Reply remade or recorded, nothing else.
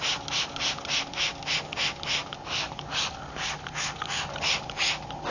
recorded